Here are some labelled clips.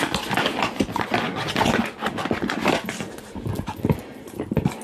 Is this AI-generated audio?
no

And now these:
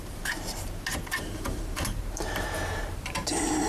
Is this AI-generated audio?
yes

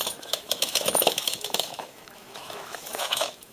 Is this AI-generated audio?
yes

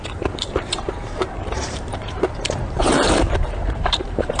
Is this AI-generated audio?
yes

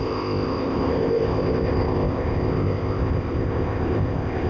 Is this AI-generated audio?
yes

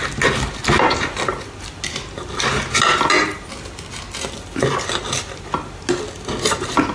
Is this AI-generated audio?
no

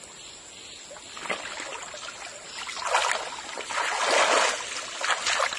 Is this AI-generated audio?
no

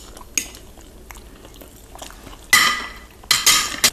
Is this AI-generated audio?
no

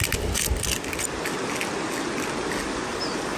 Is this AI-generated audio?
no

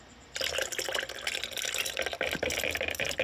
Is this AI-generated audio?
no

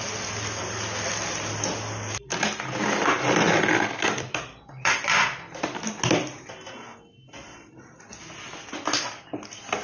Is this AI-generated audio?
no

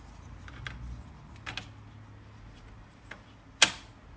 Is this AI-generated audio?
no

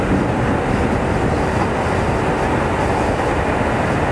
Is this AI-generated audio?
no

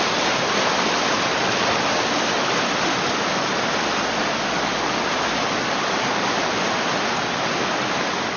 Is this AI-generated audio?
no